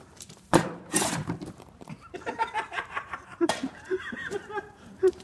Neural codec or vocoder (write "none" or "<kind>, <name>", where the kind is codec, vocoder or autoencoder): vocoder, BigVGAN v2